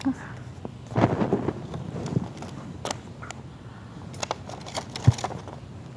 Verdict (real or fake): real